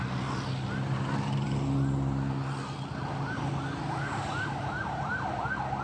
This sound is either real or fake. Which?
real